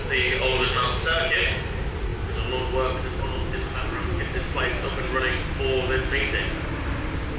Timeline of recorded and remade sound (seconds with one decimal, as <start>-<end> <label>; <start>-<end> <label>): 0.0-7.4 recorded